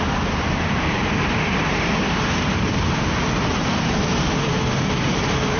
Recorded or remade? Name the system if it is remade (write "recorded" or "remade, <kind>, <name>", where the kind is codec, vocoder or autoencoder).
remade, vocoder, BigVGAN v2